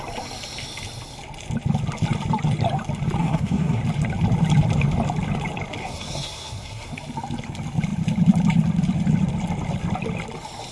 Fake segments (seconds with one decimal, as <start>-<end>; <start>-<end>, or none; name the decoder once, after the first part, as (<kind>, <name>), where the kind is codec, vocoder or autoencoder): 3.2-3.8 (codec, SNAC); 5.8-6.9